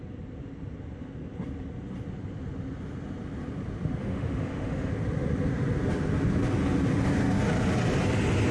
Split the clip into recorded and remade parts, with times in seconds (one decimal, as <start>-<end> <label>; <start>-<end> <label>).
0.0-4.0 recorded; 4.0-4.9 remade; 4.9-8.5 recorded